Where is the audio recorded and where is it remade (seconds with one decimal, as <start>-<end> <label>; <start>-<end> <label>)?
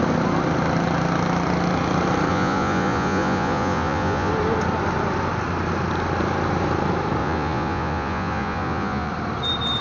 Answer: 0.0-2.3 recorded; 2.3-4.3 remade; 4.3-7.2 recorded; 7.2-9.1 remade; 9.1-9.8 recorded